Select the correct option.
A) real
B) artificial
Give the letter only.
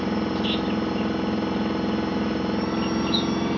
B